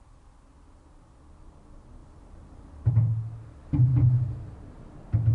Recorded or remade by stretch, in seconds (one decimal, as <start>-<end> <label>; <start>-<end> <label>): 0.0-2.0 recorded; 2.0-2.9 remade; 2.9-5.3 recorded

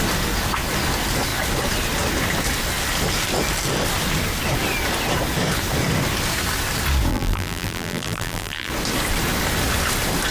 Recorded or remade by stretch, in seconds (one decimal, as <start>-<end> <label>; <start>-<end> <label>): 0.0-7.1 recorded; 7.1-8.7 remade; 8.7-10.3 recorded

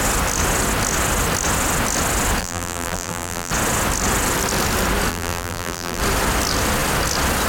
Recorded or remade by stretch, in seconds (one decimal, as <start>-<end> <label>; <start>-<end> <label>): 0.0-2.4 recorded; 2.4-3.5 remade; 3.5-5.1 recorded; 5.1-6.0 remade; 6.0-7.5 recorded

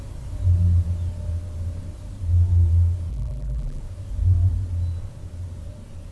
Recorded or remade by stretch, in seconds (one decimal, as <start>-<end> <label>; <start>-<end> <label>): 0.0-3.1 recorded; 3.1-3.8 remade; 3.8-6.1 recorded

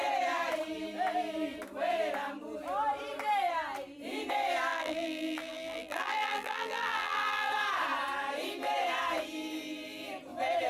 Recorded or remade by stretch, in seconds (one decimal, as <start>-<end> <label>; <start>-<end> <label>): 0.0-4.7 recorded; 4.7-7.5 remade; 7.5-10.7 recorded

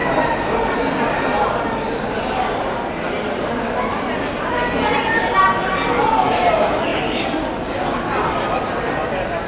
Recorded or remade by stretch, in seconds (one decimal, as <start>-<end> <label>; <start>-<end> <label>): 0.0-2.2 remade; 2.2-9.5 recorded

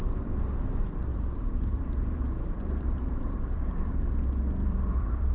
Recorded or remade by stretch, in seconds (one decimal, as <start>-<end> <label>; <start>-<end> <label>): 0.0-1.1 recorded; 1.1-4.1 remade; 4.1-4.6 recorded; 4.6-5.3 remade